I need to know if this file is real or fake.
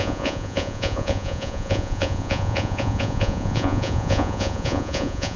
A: fake